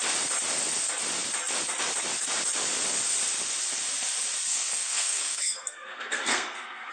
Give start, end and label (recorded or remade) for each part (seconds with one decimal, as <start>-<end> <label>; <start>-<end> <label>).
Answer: 0.0-4.5 recorded; 4.5-6.9 remade